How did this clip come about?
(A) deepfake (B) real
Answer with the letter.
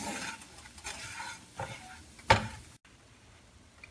B